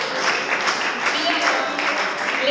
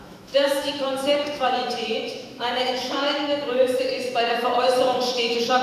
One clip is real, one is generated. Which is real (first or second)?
first